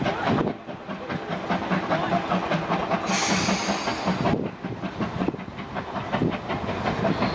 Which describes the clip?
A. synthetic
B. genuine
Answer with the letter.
B